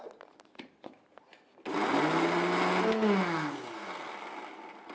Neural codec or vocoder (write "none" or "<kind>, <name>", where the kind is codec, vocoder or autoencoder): none